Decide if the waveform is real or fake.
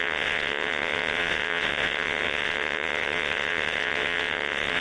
fake